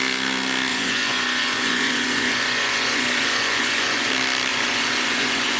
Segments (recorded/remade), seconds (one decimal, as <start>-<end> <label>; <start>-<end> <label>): 0.0-0.7 recorded; 0.7-4.1 remade; 4.1-4.5 recorded; 4.5-5.6 remade